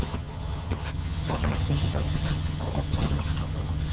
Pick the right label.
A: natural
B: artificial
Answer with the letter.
B